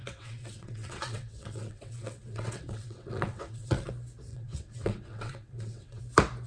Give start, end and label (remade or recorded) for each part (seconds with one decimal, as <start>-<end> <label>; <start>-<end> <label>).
0.0-3.9 remade; 3.9-4.3 recorded; 4.3-6.0 remade; 6.0-6.5 recorded